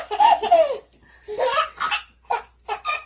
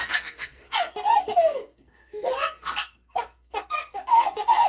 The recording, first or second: first